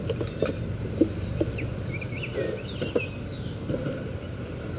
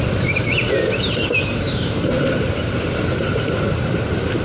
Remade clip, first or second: second